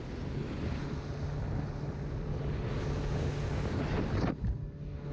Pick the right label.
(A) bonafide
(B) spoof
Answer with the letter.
A